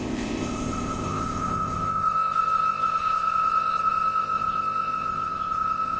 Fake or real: fake